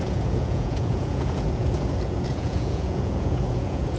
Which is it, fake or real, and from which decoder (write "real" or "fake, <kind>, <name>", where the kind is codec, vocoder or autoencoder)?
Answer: fake, vocoder, Vocos